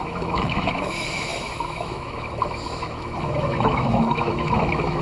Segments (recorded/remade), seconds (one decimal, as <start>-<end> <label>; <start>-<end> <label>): 0.0-5.0 remade